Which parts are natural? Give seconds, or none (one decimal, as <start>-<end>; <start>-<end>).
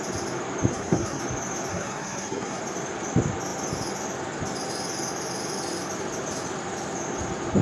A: 0.0-0.7; 1.2-1.7; 2.6-7.6